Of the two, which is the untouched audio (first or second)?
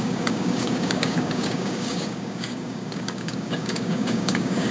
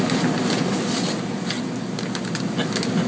second